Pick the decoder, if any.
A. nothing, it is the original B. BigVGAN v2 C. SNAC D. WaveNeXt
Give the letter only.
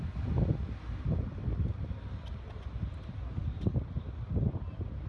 A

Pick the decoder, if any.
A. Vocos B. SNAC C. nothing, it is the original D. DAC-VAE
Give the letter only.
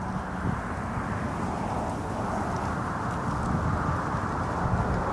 C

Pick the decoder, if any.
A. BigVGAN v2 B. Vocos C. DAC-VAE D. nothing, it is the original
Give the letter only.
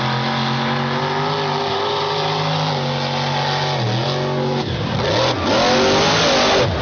D